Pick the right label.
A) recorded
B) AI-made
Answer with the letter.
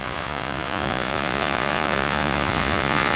B